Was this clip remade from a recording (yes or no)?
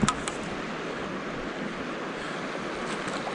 no